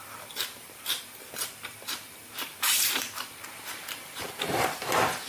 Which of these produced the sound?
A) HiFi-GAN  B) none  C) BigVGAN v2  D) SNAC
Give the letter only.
C